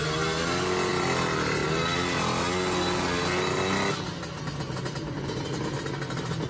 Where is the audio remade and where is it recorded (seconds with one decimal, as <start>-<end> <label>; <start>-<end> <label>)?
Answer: 0.0-6.5 recorded